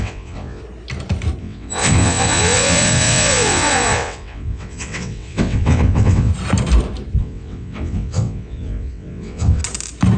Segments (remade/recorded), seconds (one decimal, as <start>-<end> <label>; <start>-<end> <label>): 0.0-0.6 remade; 0.6-1.4 recorded; 1.4-6.3 remade; 6.3-7.2 recorded; 7.2-9.6 remade; 9.6-10.2 recorded